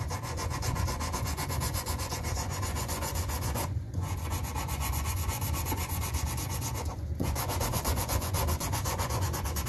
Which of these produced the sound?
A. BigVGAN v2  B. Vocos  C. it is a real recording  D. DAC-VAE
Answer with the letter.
B